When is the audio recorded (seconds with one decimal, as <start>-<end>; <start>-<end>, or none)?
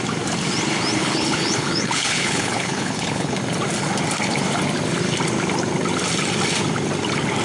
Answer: 0.0-1.0; 3.4-7.4